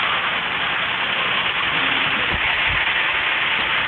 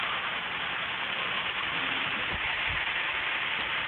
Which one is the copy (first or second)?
second